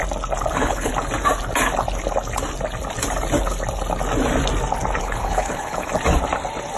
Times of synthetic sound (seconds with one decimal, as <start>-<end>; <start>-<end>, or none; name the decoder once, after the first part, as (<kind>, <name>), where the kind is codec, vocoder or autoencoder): 0.5-0.9 (codec, HILCodec); 5.0-5.9

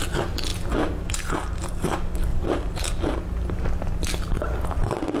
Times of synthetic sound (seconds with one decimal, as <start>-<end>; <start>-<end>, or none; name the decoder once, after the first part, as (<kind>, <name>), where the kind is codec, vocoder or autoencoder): 2.3-2.9 (vocoder, BigVGAN v2)

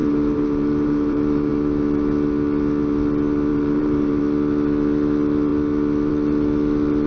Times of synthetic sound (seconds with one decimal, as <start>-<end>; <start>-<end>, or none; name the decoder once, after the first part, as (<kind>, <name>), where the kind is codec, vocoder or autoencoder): 0.0-1.5 (vocoder, BigVGAN v2); 3.5-4.2

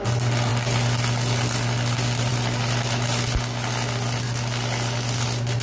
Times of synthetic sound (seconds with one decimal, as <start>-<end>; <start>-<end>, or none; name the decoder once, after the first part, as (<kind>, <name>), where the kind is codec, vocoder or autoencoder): none